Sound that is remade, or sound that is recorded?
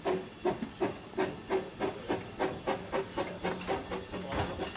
recorded